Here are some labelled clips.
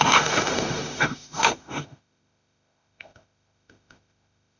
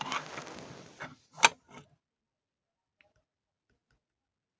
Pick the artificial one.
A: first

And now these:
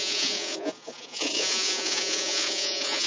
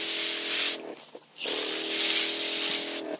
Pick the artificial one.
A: first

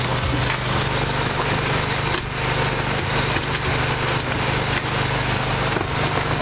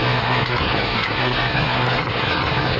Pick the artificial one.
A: second